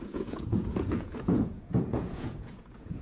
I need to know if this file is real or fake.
fake